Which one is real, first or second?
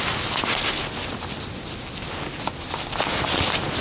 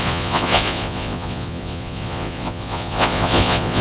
first